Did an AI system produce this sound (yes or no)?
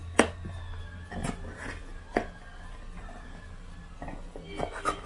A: no